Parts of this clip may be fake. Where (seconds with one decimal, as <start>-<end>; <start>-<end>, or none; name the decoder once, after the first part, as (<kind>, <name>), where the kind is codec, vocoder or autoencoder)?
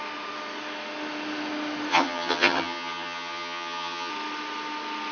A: 1.9-4.1 (vocoder, HiFi-GAN)